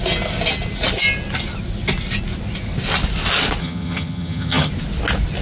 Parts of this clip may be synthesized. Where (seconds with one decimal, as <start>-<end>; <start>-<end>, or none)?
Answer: 3.6-4.7

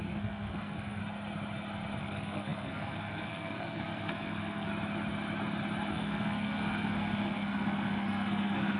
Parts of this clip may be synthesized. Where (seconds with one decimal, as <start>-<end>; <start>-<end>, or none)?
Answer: 0.0-1.0; 2.0-4.7; 5.9-8.8

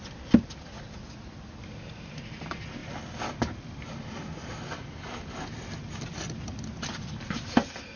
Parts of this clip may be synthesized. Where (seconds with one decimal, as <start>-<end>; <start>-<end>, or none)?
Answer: none

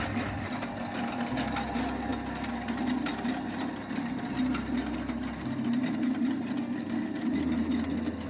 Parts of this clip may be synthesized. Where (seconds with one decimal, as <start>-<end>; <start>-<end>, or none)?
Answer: none

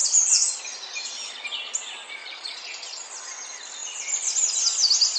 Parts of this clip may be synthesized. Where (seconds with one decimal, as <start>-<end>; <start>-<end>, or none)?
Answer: 0.0-0.6; 2.2-3.0

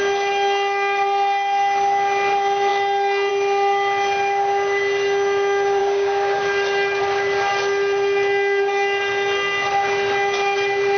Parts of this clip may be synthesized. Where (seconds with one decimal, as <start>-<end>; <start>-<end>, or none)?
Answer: 5.8-6.4

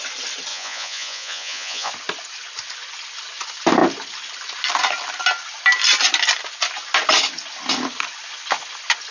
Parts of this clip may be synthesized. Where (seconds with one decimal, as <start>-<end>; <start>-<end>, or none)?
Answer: 0.5-1.9